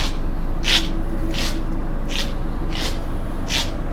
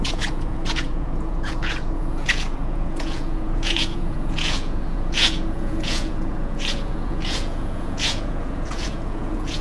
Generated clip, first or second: second